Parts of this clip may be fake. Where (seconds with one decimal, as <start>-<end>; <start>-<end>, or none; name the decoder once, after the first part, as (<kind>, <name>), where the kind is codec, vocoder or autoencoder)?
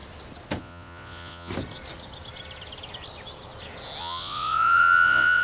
0.6-1.5 (vocoder, Vocos); 4.0-5.4